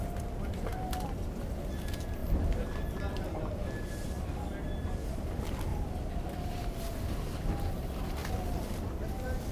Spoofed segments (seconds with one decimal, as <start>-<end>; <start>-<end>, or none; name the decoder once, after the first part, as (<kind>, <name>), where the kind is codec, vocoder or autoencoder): 2.2-3.0 (vocoder, BigVGAN v2); 8.2-8.9